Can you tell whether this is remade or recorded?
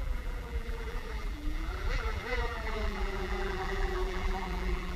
remade